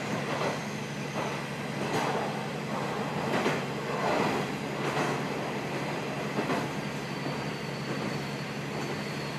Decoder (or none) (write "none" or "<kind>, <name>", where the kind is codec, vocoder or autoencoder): none